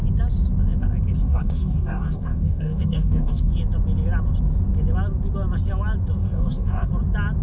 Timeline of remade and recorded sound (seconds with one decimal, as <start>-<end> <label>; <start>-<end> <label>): 0.0-1.2 recorded; 1.2-3.5 remade; 3.5-6.2 recorded; 6.2-6.9 remade; 6.9-7.4 recorded